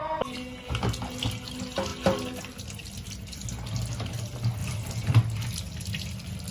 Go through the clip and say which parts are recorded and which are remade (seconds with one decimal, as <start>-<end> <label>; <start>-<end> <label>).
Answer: 0.0-4.6 recorded; 4.6-5.1 remade; 5.1-6.5 recorded